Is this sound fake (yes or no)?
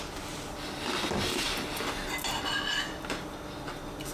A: no